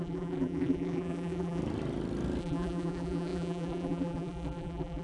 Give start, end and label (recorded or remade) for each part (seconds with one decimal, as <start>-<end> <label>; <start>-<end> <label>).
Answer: 0.0-1.6 remade; 1.6-2.4 recorded; 2.4-5.0 remade